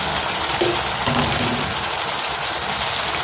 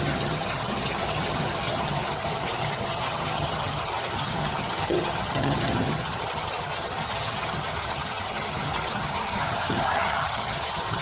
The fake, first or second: second